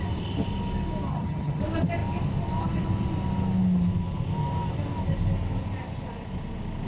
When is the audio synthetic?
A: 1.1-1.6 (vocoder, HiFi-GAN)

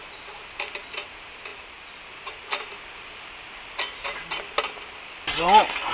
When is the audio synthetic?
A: none